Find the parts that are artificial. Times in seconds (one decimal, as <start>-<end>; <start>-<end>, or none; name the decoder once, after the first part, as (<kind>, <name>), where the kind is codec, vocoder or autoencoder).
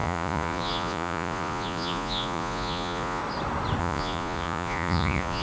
0.0-3.2 (vocoder, Vocos); 3.8-5.4